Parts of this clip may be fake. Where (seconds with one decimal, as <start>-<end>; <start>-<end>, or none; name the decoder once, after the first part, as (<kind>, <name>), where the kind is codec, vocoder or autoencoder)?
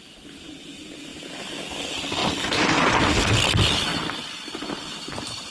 none